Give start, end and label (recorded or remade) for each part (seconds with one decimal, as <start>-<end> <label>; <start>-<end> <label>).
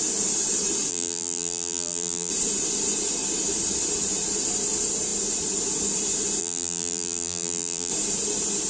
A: 0.0-0.9 recorded; 0.9-2.3 remade; 2.3-6.4 recorded; 6.4-7.9 remade; 7.9-8.7 recorded